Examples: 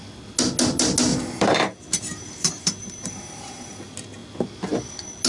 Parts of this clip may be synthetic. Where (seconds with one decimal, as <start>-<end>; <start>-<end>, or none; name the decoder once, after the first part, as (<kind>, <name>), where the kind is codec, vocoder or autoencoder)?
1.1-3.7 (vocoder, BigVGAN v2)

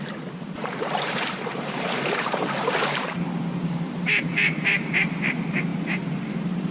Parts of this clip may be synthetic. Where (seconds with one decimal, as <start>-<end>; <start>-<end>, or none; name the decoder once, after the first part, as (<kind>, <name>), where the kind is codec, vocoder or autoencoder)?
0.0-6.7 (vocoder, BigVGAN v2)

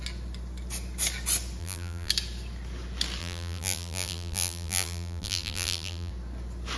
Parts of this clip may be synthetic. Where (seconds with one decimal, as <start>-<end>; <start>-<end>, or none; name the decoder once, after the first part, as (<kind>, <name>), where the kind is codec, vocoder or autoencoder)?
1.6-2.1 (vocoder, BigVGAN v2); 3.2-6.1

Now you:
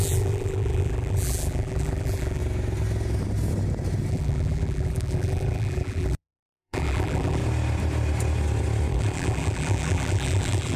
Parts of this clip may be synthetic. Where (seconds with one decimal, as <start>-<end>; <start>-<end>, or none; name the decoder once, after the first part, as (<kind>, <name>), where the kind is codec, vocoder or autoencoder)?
0.0-2.4 (vocoder, BigVGAN v2); 4.1-7.4; 8.9-10.8

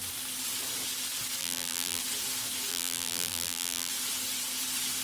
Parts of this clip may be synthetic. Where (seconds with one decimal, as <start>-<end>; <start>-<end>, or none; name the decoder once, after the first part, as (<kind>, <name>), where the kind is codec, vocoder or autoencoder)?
1.4-2.0 (vocoder, BigVGAN v2); 2.7-3.9